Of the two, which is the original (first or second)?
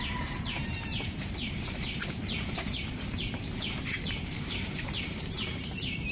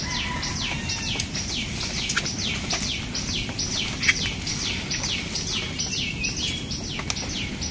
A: second